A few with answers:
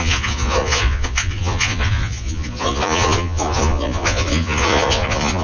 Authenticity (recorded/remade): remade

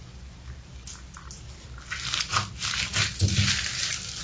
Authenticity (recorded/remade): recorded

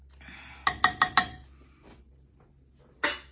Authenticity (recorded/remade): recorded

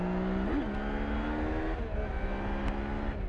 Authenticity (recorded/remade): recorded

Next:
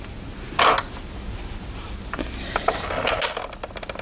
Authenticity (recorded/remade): recorded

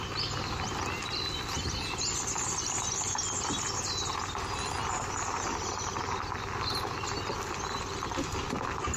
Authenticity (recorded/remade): recorded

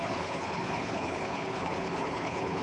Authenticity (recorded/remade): remade